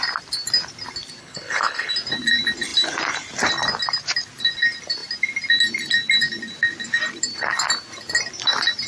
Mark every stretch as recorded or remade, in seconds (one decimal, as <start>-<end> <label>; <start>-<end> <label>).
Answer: 0.0-1.2 recorded; 1.2-1.9 remade; 1.9-8.9 recorded

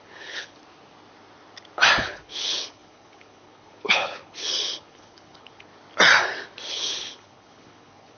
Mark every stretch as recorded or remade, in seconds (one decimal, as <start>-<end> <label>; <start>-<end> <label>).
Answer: 0.0-0.6 remade; 0.6-2.0 recorded; 2.0-5.7 remade; 5.7-6.7 recorded; 6.7-8.2 remade

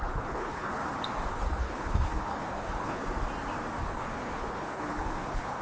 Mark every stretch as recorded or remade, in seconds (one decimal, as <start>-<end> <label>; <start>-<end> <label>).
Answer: 0.0-0.8 remade; 0.8-1.3 recorded; 1.3-3.0 remade; 3.0-3.8 recorded; 3.8-5.6 remade

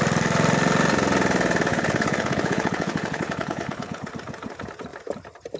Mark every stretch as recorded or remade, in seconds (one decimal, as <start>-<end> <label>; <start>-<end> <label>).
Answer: 0.0-1.7 recorded; 1.7-4.1 remade; 4.1-5.6 recorded

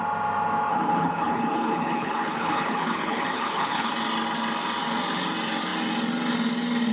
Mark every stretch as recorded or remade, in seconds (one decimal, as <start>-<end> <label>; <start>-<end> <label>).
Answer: 0.0-0.7 recorded; 0.7-3.9 remade; 3.9-6.9 recorded

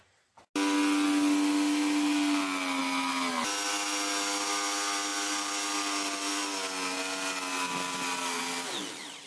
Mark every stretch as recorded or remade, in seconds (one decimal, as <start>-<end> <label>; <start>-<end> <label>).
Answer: 0.0-9.3 recorded

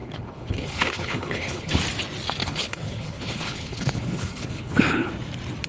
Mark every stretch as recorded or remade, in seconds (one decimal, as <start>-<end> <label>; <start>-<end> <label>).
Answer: 0.0-1.8 remade; 1.8-2.4 recorded; 2.4-5.1 remade; 5.1-5.7 recorded